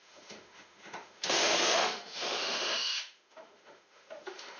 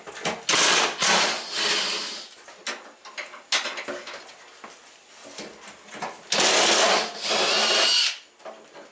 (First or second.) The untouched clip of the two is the second